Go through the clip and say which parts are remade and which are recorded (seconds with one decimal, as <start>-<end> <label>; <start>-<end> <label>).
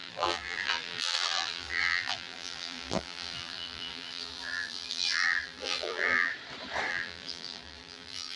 0.0-6.3 remade; 6.3-6.9 recorded; 6.9-8.4 remade